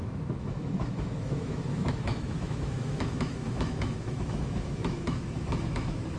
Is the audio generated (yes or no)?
yes